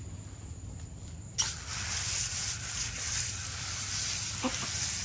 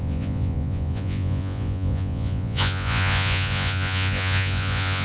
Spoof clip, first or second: second